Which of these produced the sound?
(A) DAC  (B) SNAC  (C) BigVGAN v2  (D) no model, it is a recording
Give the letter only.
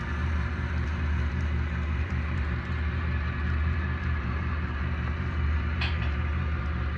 C